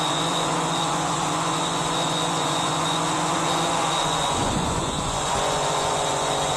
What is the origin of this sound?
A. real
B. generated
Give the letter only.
B